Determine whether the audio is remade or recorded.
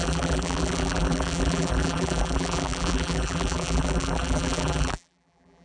remade